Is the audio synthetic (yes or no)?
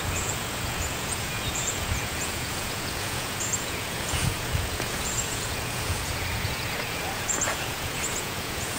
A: yes